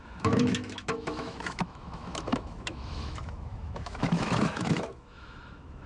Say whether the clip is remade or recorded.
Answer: remade